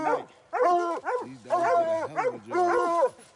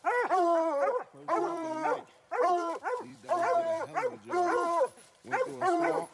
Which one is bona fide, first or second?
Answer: first